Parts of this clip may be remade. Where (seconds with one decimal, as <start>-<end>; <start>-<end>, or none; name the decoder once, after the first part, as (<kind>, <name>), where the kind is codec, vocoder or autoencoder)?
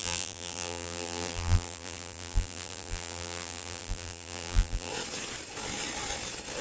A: 0.0-4.9 (vocoder, BigVGAN v2)